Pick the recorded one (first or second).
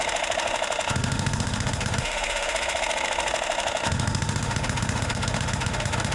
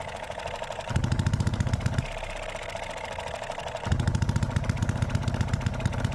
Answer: second